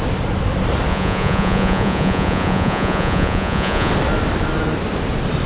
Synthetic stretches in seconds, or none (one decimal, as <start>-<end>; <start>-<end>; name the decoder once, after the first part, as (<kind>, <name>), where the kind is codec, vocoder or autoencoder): 0.9-3.9 (vocoder, Vocos)